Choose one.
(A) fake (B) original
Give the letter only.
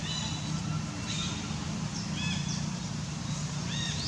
B